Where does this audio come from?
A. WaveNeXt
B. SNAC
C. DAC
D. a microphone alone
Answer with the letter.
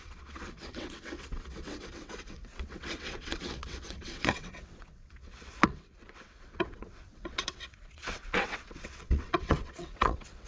A